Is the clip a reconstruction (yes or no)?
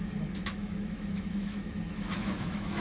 yes